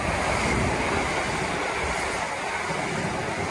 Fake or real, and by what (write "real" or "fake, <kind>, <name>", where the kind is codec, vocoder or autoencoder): real